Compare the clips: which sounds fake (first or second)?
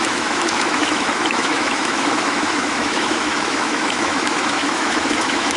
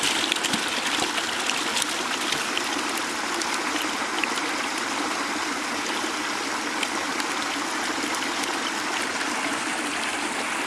first